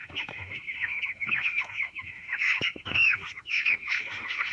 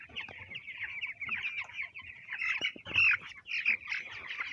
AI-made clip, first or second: first